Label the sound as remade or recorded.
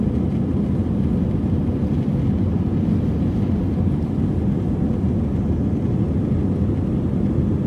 recorded